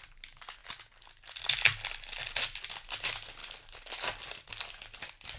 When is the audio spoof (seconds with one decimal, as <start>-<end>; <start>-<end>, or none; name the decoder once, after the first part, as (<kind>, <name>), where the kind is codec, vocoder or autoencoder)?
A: none